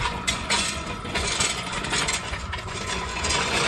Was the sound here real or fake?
fake